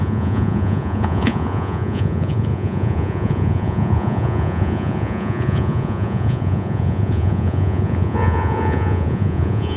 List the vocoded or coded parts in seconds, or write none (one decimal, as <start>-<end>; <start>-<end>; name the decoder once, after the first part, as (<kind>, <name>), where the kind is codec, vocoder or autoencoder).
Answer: 0.0-9.8 (vocoder, Vocos)